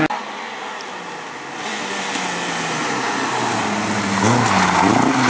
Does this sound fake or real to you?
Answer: real